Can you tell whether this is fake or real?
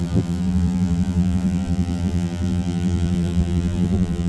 fake